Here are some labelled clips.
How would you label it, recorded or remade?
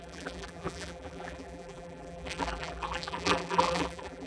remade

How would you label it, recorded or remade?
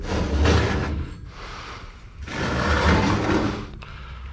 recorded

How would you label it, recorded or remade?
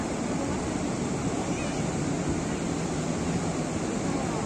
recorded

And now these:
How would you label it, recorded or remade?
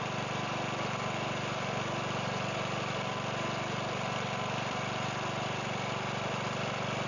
recorded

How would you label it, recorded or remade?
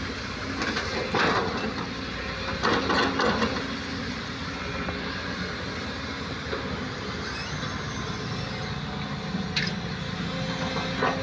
recorded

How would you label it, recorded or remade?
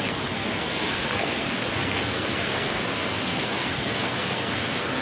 remade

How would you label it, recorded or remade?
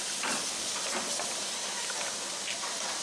recorded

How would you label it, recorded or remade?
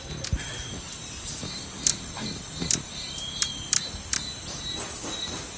recorded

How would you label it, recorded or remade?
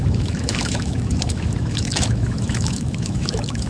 remade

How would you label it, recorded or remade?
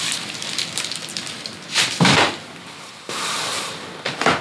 recorded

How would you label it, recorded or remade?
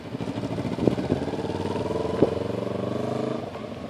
recorded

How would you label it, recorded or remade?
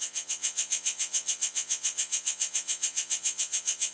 remade